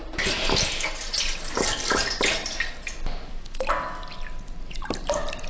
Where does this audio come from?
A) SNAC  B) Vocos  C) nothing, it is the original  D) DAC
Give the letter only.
C